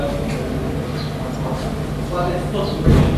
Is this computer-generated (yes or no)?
no